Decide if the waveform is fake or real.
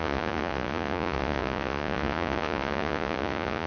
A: fake